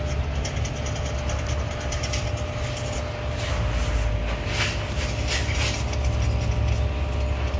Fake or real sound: real